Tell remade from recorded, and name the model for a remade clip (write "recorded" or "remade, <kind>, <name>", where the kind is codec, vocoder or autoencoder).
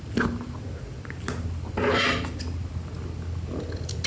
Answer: recorded